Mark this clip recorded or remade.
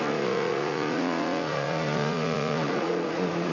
remade